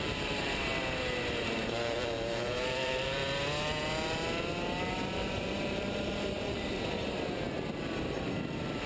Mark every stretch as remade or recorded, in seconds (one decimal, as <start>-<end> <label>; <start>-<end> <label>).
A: 0.0-0.7 remade; 0.7-1.4 recorded; 1.4-3.2 remade; 3.2-4.9 recorded; 4.9-6.7 remade; 6.7-7.7 recorded; 7.7-8.9 remade